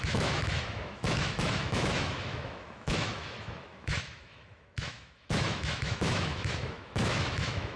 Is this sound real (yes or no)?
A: no